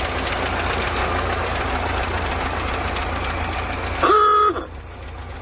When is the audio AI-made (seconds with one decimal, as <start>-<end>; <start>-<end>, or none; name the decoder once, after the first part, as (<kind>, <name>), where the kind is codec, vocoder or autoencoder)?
none